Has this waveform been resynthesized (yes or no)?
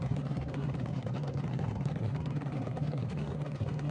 yes